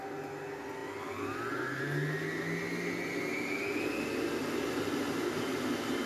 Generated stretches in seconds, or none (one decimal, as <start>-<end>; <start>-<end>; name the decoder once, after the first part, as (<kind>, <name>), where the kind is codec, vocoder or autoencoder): none